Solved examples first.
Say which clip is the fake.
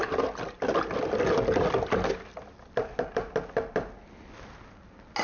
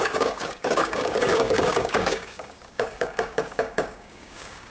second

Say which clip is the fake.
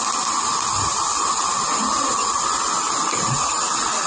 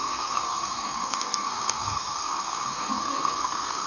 second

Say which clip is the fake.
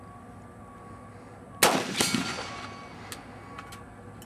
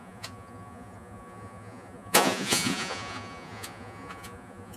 second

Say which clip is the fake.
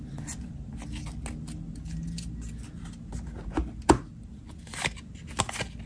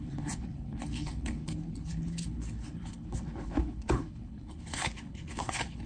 second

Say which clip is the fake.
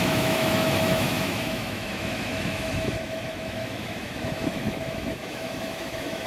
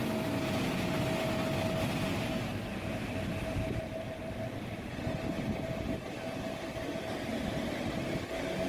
first